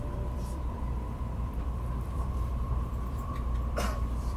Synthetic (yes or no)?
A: yes